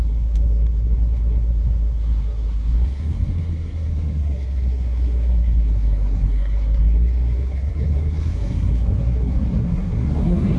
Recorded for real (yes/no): no